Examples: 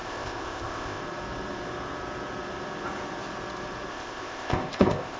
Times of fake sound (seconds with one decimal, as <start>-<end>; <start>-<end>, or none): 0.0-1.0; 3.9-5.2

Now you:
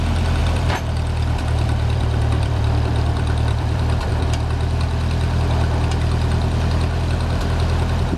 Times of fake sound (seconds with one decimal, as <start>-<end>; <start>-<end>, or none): 0.4-4.1

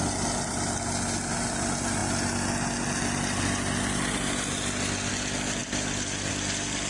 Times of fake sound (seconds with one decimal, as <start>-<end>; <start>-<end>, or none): none

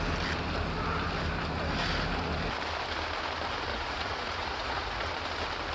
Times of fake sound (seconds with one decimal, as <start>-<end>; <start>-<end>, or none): 3.7-5.1

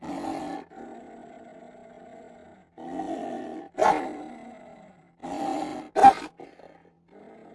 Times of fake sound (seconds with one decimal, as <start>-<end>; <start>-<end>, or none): none